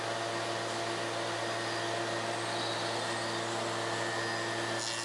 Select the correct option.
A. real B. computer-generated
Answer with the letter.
A